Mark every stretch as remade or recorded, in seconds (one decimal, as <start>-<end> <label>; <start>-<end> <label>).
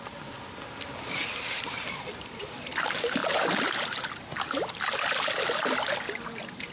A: 0.0-6.7 recorded